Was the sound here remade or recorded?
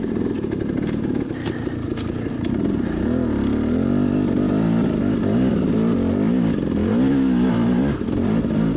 recorded